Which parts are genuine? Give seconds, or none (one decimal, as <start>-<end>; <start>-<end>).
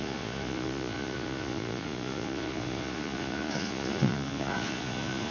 none